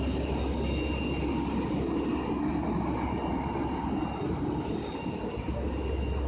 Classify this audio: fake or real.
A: real